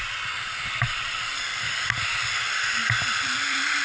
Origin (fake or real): real